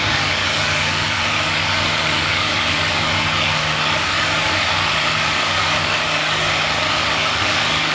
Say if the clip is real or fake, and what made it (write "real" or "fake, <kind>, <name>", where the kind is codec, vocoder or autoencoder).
fake, codec, DAC